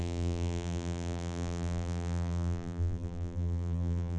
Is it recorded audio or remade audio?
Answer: remade